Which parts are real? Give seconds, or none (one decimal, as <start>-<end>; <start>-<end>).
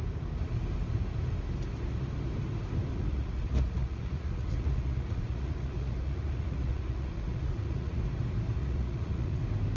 0.0-2.9; 8.0-8.6; 9.4-9.8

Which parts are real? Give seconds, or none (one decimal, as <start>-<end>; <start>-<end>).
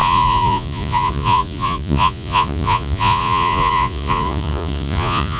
none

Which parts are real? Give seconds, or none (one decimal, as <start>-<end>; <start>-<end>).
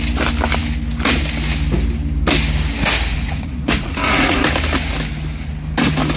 0.0-3.1; 4.4-6.2